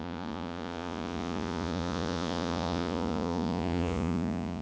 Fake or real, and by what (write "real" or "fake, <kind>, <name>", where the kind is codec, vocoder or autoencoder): fake, vocoder, Vocos